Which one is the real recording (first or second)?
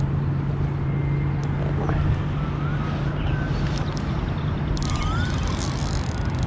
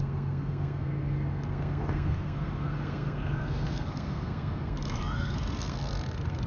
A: first